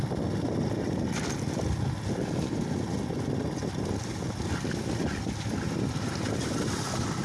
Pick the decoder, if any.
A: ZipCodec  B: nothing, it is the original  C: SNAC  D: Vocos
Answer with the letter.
B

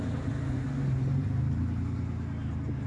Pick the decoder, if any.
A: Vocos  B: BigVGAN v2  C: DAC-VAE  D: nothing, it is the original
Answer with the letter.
D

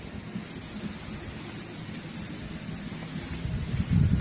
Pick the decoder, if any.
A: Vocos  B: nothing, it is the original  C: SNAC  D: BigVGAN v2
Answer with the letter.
B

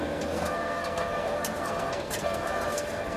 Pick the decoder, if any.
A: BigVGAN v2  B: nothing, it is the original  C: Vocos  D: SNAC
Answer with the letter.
D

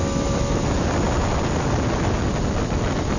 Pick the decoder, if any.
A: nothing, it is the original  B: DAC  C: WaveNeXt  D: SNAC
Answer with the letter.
A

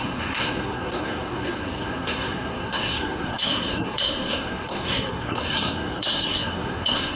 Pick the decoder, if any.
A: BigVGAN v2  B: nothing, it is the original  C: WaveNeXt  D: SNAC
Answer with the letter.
D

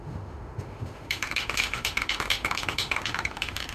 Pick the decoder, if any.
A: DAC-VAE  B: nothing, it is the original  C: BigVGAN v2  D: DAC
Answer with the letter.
A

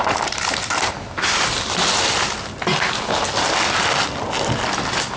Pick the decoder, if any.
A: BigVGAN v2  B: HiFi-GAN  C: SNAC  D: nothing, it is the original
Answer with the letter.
D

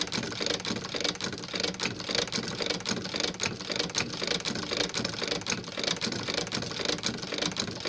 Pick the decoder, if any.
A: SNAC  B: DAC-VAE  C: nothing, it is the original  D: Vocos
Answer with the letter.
C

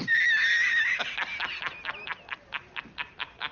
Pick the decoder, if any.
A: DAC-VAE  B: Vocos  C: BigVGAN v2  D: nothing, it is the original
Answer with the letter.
D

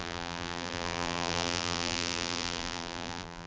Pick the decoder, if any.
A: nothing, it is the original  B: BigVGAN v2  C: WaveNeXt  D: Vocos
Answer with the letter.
B